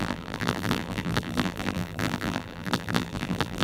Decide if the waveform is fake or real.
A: fake